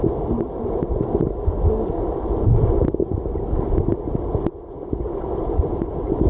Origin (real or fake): real